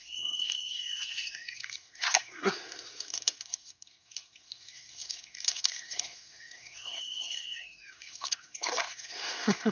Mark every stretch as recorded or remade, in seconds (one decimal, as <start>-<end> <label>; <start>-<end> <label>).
0.0-9.7 remade